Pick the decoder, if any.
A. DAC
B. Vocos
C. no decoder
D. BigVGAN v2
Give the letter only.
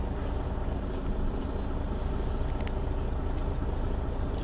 C